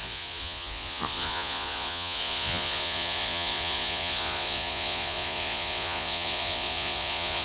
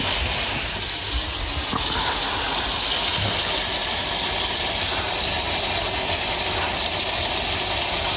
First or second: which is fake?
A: first